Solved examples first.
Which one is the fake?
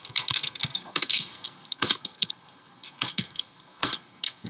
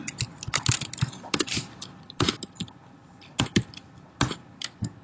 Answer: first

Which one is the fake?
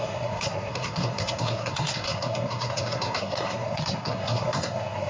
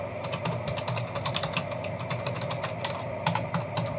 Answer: first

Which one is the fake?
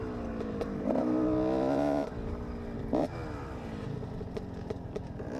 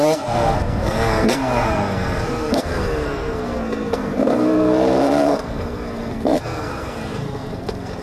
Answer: second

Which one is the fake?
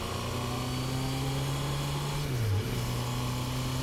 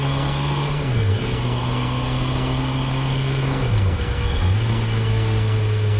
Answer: second